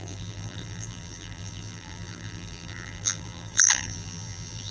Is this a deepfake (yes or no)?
yes